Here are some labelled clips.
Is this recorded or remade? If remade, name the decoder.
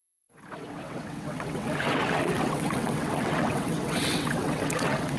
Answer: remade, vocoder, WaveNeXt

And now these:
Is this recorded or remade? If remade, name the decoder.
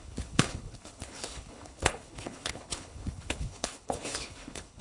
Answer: remade, codec, HILCodec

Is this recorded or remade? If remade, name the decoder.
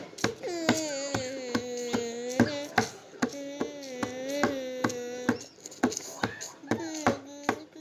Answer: recorded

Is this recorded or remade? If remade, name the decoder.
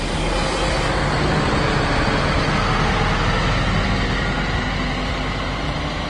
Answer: recorded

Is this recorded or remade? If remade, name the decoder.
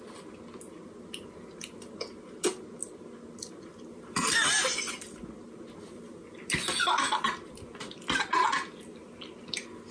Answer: recorded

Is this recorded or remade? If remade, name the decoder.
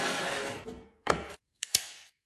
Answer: remade, codec, SNAC